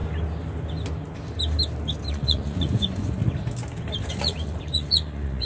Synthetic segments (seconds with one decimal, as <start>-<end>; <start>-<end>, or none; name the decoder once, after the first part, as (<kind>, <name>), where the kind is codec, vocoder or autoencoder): 2.1-3.2 (vocoder, Vocos); 4.1-5.5